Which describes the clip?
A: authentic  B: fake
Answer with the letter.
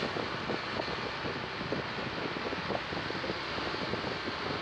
A